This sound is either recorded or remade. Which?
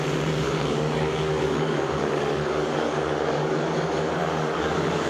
remade